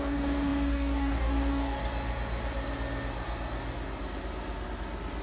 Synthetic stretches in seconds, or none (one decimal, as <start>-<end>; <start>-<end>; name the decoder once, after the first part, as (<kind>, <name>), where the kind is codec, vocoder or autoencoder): 0.0-1.8 (codec, DAC)